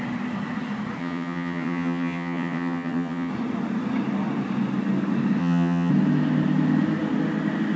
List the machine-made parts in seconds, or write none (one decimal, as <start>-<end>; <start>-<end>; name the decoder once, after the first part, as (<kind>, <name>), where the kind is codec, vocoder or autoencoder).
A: 1.0-3.3 (vocoder, HiFi-GAN); 5.4-5.9